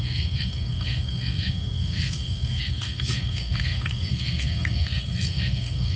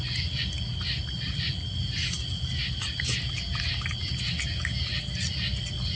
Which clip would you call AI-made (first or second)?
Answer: first